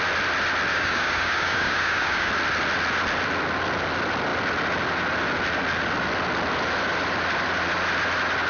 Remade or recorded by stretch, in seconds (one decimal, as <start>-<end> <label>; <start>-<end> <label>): 0.0-0.7 recorded; 0.7-2.3 remade; 2.3-8.5 recorded